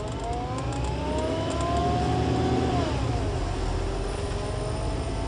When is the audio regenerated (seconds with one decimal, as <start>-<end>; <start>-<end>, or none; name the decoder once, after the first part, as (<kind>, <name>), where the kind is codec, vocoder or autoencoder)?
none